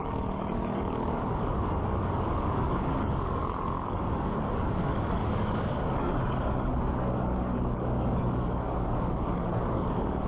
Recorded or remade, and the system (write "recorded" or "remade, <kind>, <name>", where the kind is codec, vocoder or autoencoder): remade, codec, DAC